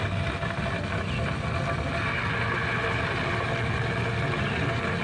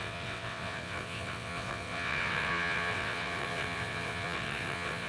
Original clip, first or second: first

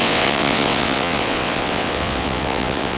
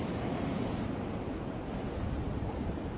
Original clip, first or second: second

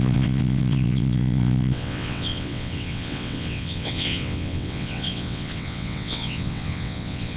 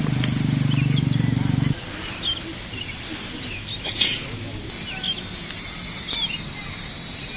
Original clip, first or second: second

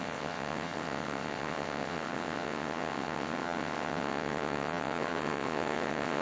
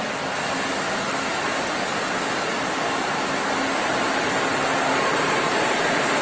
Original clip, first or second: second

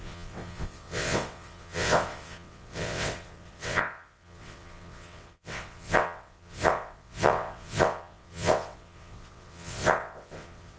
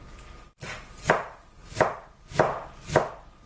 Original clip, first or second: second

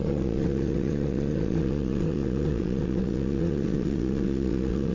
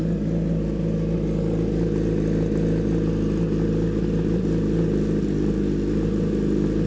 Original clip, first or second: second